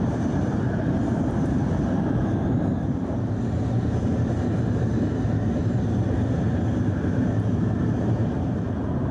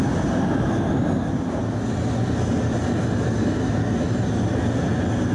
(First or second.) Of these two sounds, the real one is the second